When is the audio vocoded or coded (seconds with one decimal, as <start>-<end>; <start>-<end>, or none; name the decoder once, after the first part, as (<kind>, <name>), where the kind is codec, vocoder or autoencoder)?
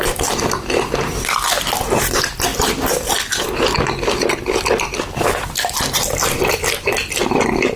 none